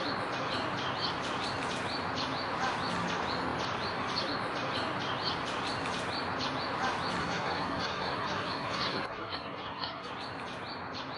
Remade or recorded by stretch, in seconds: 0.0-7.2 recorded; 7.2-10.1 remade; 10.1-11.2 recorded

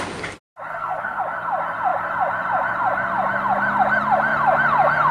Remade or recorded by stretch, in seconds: 0.0-0.7 recorded; 0.7-1.2 remade; 1.2-5.1 recorded

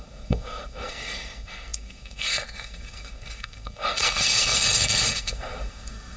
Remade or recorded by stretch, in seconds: 0.0-6.2 remade

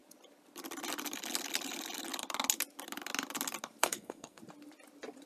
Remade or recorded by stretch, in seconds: 0.0-3.8 recorded; 3.8-4.4 remade; 4.4-5.3 recorded

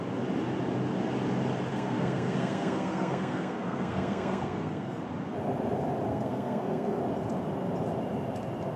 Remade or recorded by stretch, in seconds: 0.0-1.7 recorded; 1.7-5.0 remade; 5.0-6.1 recorded; 6.1-7.0 remade; 7.0-8.8 recorded

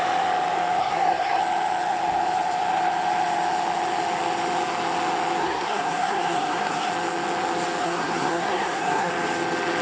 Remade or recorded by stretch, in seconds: 0.0-0.8 recorded; 0.8-1.4 remade; 1.4-5.4 recorded; 5.4-6.9 remade; 6.9-7.8 recorded; 7.8-9.1 remade; 9.1-9.8 recorded